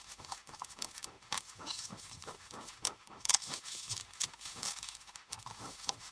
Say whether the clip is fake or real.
fake